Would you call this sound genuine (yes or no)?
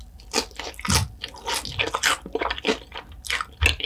yes